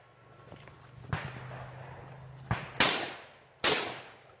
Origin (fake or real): real